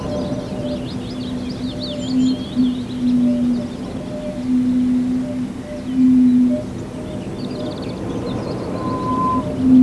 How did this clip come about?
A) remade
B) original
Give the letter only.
B